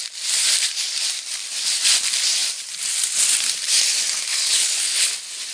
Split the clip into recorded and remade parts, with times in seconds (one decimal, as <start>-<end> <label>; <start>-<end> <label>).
0.0-4.3 recorded; 4.3-5.1 remade; 5.1-5.5 recorded